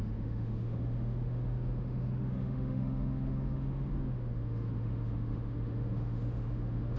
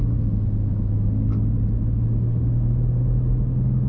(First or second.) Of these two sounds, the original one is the second